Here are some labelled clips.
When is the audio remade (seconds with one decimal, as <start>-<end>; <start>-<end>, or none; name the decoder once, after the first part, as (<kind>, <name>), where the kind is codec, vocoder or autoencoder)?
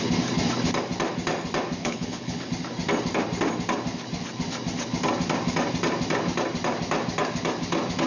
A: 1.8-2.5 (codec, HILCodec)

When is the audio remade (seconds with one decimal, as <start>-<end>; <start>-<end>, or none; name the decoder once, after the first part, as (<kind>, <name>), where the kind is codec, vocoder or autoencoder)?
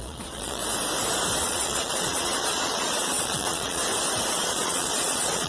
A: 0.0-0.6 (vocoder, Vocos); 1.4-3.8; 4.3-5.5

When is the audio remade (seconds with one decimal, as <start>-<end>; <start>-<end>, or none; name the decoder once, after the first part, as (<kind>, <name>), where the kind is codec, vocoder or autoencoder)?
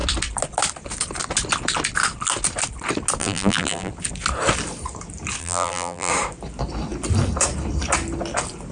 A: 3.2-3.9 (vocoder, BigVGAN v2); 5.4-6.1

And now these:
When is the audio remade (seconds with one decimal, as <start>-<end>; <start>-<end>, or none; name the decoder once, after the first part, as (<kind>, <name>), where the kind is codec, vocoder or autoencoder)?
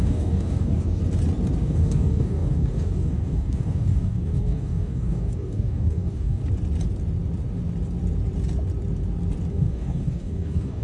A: 0.0-1.0 (codec, DAC); 1.6-6.4; 9.5-10.8